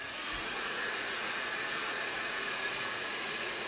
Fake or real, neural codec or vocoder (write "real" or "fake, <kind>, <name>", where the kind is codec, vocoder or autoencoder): fake, vocoder, Vocos